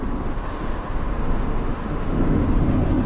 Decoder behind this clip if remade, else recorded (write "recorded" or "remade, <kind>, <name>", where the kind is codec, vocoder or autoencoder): remade, autoencoder, DAC-VAE